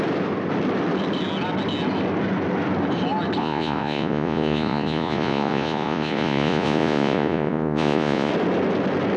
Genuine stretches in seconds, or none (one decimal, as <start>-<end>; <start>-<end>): 0.0-3.4; 8.3-9.2